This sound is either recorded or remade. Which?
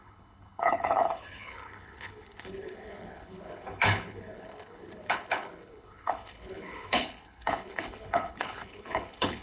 remade